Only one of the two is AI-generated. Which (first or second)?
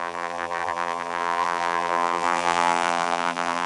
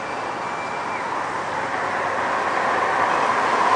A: first